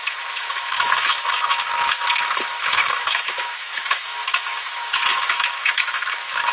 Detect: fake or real fake